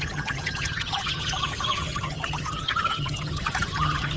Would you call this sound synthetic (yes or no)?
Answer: yes